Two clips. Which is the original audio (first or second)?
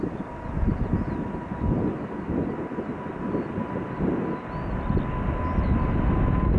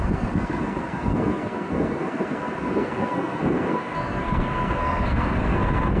first